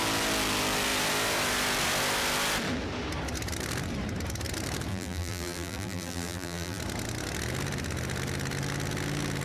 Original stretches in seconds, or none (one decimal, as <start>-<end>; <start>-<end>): 0.0-4.9; 6.8-9.4

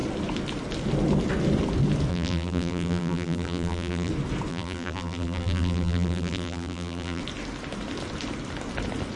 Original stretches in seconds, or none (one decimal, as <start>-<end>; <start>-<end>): 0.0-2.1; 4.1-4.5; 7.2-9.2

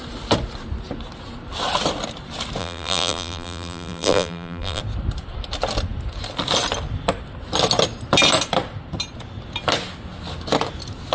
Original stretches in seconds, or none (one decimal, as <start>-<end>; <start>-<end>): 0.0-2.6; 4.8-11.1

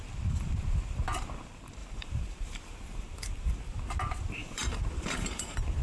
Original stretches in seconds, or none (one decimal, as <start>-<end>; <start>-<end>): 0.0-1.8; 3.8-4.4